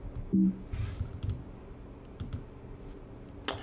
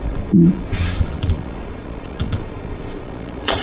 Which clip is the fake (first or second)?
second